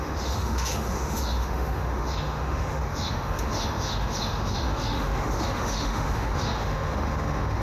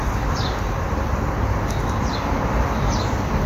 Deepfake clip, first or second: first